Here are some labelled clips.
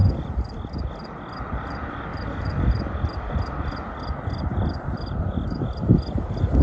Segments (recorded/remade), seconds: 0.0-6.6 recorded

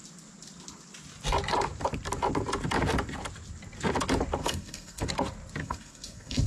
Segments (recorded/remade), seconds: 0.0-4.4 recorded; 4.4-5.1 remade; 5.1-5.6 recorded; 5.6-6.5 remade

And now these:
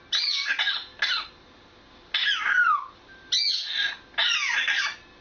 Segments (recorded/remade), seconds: 0.0-5.2 recorded